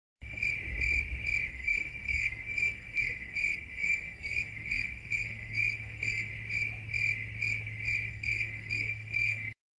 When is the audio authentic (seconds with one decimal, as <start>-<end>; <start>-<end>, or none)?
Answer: 0.4-1.5; 6.3-8.1